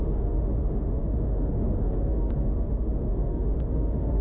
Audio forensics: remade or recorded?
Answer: remade